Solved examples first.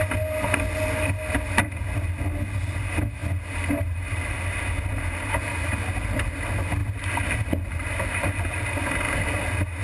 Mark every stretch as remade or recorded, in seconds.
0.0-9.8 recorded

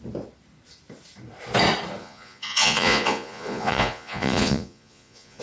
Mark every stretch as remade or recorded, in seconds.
0.0-2.0 recorded; 2.0-5.4 remade

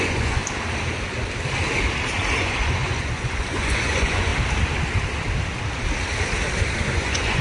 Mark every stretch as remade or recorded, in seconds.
0.0-0.4 remade; 0.4-2.4 recorded; 2.4-4.3 remade; 4.3-6.8 recorded; 6.8-7.4 remade

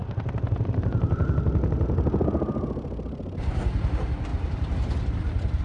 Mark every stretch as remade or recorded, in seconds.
0.0-5.6 recorded

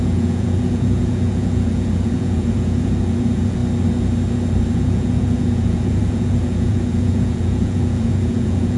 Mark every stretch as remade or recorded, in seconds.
0.0-3.6 remade; 3.6-4.7 recorded; 4.7-8.8 remade

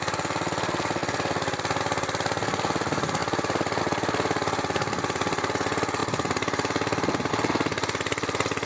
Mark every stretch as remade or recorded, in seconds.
0.0-8.7 recorded